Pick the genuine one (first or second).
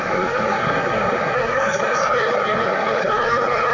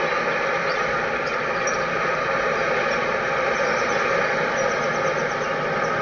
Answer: second